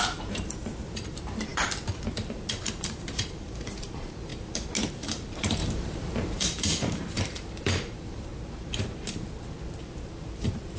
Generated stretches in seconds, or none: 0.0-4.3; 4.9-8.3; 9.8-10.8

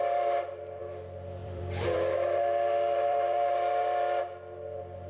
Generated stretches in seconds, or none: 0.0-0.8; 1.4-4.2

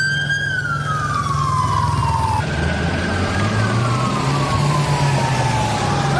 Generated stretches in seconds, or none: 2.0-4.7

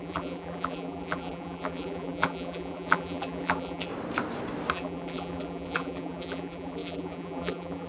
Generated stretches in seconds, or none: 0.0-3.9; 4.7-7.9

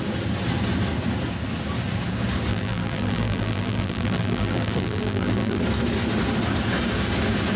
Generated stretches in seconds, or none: 2.5-5.6

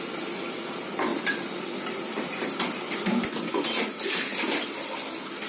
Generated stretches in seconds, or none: 1.1-3.5

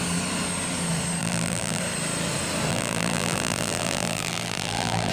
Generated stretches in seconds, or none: 1.2-1.8; 2.7-5.1